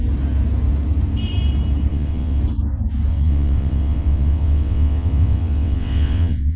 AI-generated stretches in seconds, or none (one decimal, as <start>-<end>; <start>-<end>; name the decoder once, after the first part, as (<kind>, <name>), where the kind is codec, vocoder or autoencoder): 1.9-2.4 (vocoder, WaveNeXt); 3.1-6.6